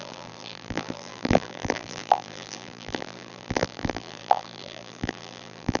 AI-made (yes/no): yes